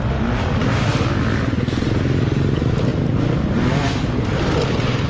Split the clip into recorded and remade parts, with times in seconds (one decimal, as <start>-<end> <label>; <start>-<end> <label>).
0.0-5.1 recorded